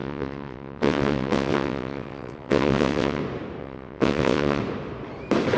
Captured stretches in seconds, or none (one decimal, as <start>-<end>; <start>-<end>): 3.2-3.6; 4.6-5.6